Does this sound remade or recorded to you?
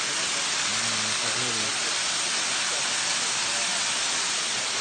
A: recorded